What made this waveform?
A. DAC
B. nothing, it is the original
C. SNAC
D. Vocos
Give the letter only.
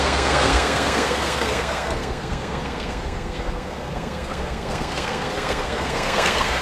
C